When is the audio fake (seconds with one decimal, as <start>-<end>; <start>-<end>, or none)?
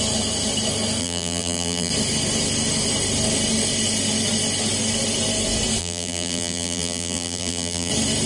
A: 1.0-1.9; 5.8-7.9